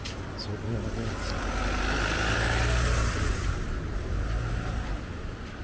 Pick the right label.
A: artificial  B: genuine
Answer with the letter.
B